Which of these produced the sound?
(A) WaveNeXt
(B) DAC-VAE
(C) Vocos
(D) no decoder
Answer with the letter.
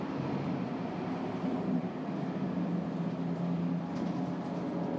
D